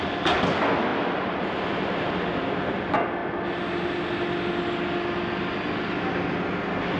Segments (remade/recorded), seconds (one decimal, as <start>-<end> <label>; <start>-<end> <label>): 0.0-7.0 recorded